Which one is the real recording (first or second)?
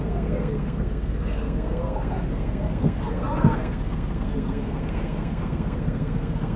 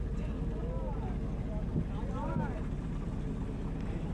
second